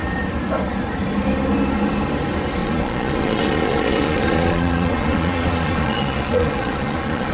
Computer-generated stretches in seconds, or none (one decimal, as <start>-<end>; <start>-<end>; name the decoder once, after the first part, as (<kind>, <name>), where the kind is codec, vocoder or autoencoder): 2.6-7.3 (vocoder, Vocos)